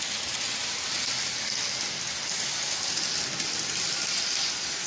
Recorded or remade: recorded